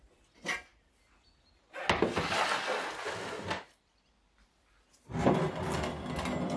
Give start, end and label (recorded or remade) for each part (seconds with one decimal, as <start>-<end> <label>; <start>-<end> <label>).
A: 0.0-6.6 recorded